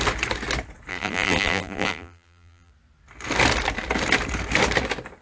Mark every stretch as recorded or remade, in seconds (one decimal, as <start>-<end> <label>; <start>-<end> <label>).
0.0-0.9 recorded; 0.9-2.7 remade; 2.7-5.2 recorded